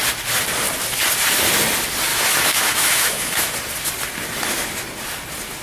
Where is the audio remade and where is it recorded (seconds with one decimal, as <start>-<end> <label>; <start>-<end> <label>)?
0.0-2.1 recorded; 2.1-3.5 remade; 3.5-5.6 recorded